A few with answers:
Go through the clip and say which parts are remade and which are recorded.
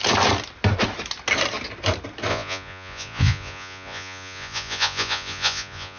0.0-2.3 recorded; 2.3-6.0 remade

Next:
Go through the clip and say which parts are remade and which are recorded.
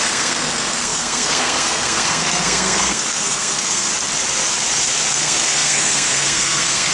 0.0-3.9 remade; 3.9-5.1 recorded; 5.1-6.9 remade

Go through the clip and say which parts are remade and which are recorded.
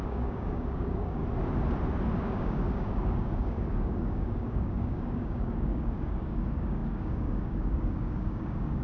0.0-1.2 remade; 1.2-2.2 recorded; 2.2-8.8 remade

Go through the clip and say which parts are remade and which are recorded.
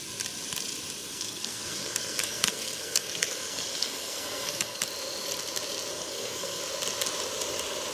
0.0-1.0 recorded; 1.0-4.8 remade; 4.8-5.9 recorded; 5.9-6.6 remade; 6.6-7.9 recorded